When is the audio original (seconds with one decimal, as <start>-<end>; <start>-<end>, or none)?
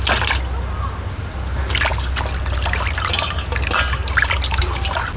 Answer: 0.0-5.2